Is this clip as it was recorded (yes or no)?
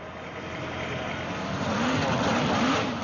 yes